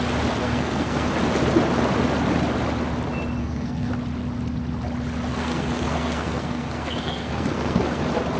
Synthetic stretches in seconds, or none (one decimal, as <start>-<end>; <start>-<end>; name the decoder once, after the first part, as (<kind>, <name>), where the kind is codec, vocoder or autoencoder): 0.4-1.1 (codec, SNAC); 3.4-3.9; 5.3-8.0

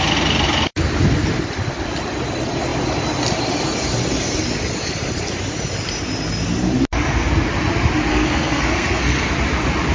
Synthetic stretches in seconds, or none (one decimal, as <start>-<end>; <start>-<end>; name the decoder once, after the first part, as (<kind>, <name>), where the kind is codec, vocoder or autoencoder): 8.1-9.3 (codec, SNAC)

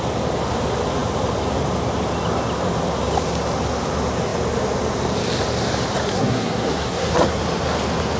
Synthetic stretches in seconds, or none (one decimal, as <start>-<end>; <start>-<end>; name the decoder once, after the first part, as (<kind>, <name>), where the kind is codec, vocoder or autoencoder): 6.1-7.4 (codec, SNAC)

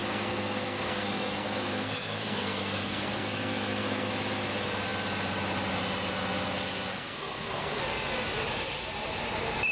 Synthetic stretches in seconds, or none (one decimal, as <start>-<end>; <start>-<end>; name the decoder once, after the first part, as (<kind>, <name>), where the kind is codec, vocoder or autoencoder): 0.0-4.1 (codec, SNAC); 6.9-7.8

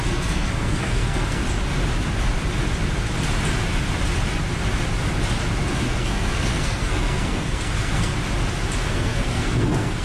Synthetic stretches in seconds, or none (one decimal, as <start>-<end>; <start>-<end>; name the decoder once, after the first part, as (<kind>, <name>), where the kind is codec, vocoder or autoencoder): 0.0-1.4 (codec, SNAC); 5.7-8.1; 8.8-10.0

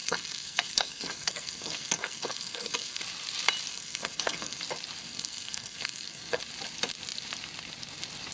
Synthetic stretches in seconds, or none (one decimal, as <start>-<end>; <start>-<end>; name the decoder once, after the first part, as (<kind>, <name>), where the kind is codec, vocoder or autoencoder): 0.0-3.0 (codec, SNAC); 3.7-4.6; 5.0-6.4